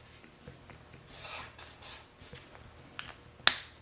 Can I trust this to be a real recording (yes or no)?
yes